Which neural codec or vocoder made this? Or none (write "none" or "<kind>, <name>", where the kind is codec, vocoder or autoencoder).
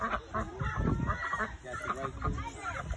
none